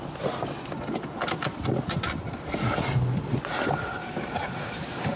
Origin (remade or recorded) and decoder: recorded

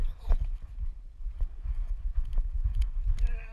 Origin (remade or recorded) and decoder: recorded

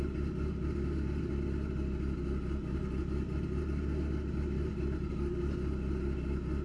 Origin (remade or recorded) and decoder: recorded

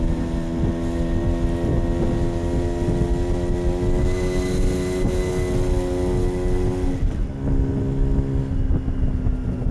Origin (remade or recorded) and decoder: recorded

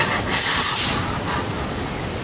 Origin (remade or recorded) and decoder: recorded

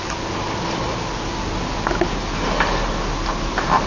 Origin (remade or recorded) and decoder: recorded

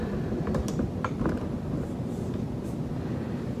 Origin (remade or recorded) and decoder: recorded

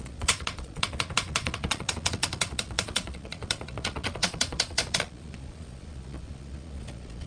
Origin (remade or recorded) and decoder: remade, vocoder, Vocos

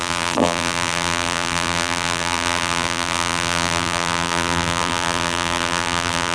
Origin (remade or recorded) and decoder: remade, vocoder, BigVGAN v2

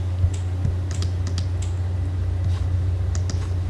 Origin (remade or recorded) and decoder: recorded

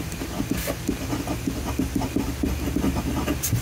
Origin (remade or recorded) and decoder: recorded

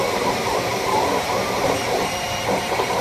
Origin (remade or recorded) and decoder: remade, vocoder, BigVGAN v2